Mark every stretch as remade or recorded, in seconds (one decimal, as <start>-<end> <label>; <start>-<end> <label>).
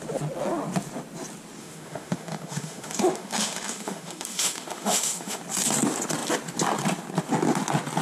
0.0-1.6 recorded; 1.6-5.4 remade; 5.4-8.0 recorded